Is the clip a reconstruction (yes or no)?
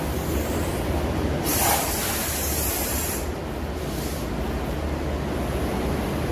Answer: no